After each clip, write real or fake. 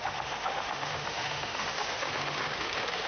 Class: fake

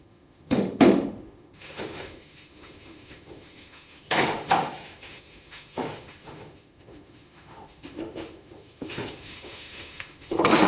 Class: fake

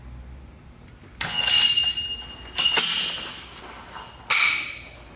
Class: real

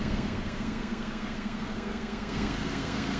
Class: fake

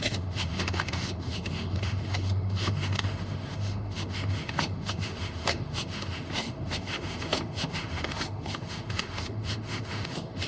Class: fake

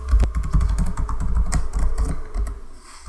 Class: real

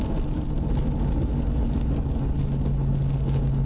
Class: real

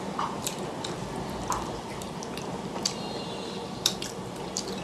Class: fake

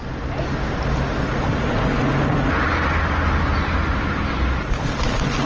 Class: real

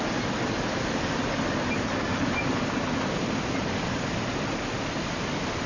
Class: real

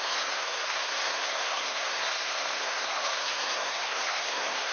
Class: fake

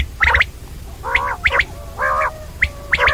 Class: real